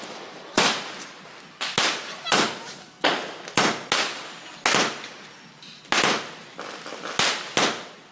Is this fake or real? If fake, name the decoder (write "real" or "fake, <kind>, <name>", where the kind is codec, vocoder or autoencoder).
real